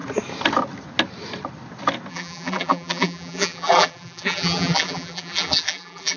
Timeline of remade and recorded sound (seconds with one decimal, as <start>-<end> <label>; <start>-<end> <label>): 0.0-2.1 recorded; 2.1-6.2 remade